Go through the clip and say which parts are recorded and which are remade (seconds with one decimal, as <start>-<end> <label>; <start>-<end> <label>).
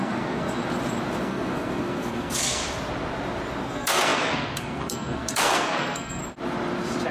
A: 0.0-0.6 remade; 0.6-1.2 recorded; 1.2-2.6 remade; 2.6-3.6 recorded; 3.6-6.2 remade; 6.2-7.1 recorded